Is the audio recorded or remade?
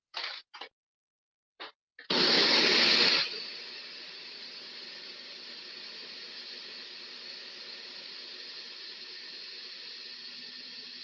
remade